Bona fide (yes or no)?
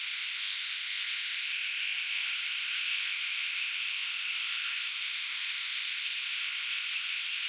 no